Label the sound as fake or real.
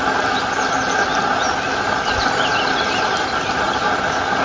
real